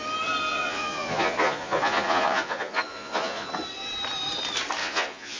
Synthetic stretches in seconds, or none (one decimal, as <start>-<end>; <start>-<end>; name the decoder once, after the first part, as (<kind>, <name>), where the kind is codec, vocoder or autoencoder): 0.5-3.5 (vocoder, Vocos); 4.8-5.4